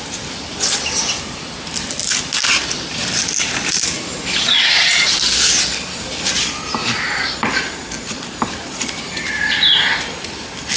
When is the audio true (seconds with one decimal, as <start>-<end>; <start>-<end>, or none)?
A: 0.0-2.6; 4.7-6.8; 8.2-10.8